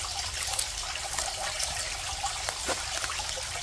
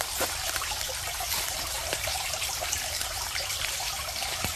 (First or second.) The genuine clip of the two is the first